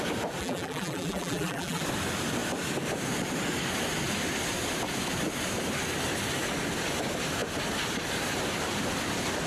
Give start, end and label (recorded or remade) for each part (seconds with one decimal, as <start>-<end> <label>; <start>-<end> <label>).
0.0-0.4 recorded; 0.4-1.8 remade; 1.8-9.5 recorded